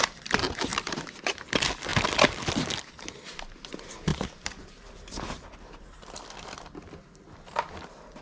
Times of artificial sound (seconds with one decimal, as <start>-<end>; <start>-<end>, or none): 0.0-0.7; 1.4-1.9; 2.9-8.2